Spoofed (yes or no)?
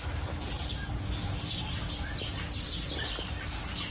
no